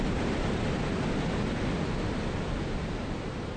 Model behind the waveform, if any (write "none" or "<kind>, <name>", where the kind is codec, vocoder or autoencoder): none